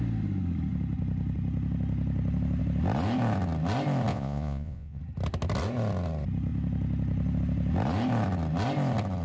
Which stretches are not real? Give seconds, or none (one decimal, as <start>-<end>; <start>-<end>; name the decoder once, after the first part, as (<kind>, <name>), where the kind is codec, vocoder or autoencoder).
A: 4.1-5.0 (vocoder, Vocos)